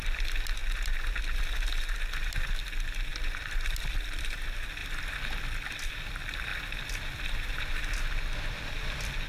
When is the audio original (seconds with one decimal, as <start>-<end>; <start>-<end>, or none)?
0.0-9.3